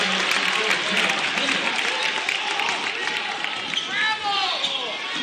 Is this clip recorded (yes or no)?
yes